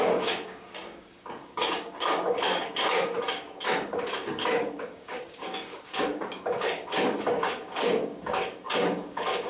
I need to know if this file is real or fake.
fake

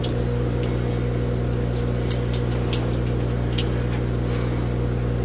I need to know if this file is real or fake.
real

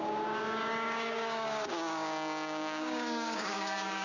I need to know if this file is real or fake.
fake